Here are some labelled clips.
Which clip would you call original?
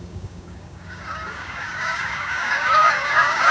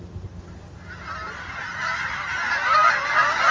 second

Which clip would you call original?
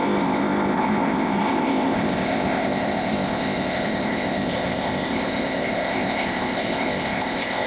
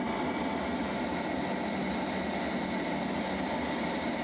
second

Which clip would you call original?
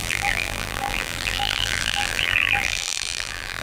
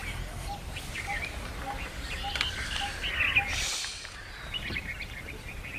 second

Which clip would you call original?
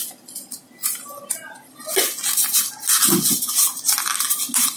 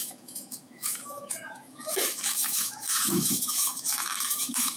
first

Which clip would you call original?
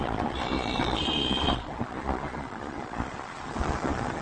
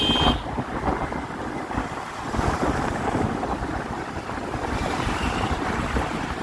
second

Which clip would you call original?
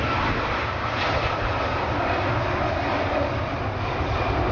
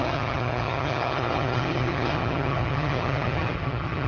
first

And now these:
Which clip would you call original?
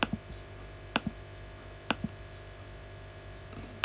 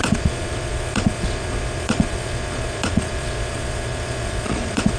first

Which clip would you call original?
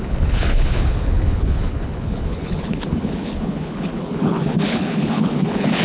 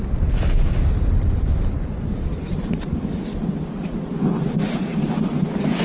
second